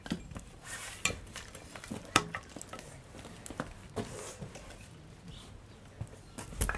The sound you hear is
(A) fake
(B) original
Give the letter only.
B